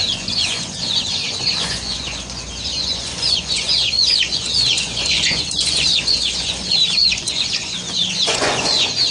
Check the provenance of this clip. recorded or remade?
remade